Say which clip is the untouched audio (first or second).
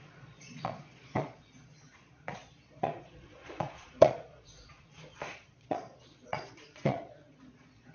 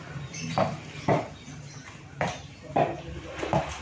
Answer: second